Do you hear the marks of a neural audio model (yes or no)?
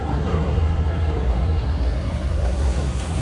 yes